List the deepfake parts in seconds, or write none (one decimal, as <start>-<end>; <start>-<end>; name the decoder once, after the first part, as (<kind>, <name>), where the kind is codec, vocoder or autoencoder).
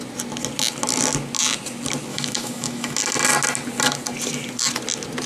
2.1-3.0 (autoencoder, DAC-VAE)